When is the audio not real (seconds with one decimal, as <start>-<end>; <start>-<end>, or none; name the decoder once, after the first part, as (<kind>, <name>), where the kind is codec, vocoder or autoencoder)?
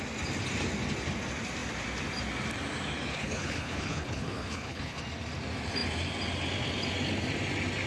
3.1-5.0 (codec, HILCodec)